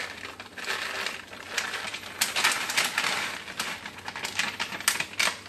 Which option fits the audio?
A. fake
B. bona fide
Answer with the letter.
B